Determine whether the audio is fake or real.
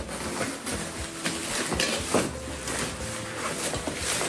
real